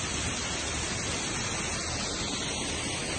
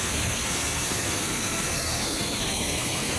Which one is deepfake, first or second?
second